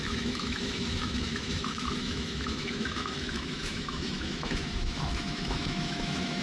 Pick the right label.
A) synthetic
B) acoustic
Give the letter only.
A